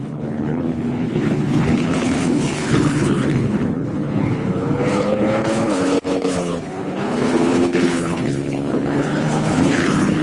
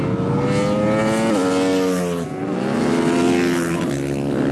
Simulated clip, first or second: first